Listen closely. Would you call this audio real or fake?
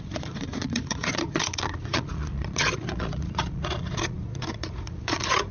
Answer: fake